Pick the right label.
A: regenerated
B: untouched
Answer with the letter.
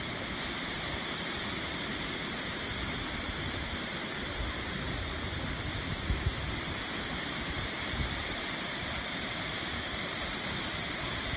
A